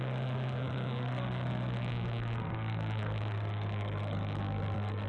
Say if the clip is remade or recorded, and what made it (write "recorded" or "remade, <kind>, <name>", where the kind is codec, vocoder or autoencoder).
remade, codec, SNAC